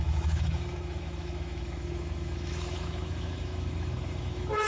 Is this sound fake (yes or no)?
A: yes